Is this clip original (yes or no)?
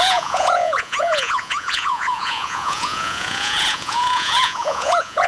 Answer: no